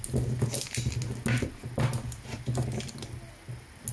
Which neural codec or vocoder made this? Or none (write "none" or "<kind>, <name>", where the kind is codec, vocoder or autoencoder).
none